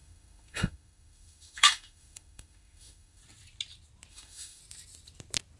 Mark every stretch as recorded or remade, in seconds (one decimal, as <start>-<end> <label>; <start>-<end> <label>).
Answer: 0.0-3.2 remade; 3.2-4.1 recorded; 4.1-4.6 remade; 4.6-5.6 recorded